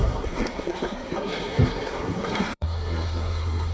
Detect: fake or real fake